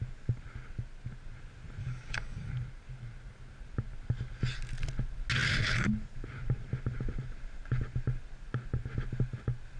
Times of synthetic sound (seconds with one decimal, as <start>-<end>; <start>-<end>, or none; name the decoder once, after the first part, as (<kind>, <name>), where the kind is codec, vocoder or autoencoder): 1.8-2.5 (codec, DAC)